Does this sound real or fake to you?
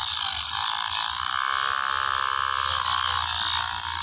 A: real